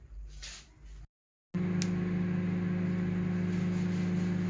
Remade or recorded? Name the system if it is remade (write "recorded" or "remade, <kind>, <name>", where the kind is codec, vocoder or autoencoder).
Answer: recorded